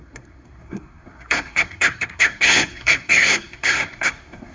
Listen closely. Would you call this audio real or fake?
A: fake